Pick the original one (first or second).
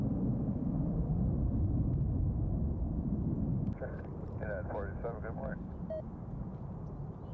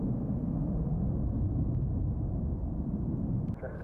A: second